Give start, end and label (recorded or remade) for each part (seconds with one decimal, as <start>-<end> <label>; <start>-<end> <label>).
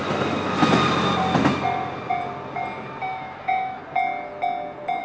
0.0-3.0 recorded; 3.0-3.8 remade; 3.8-5.0 recorded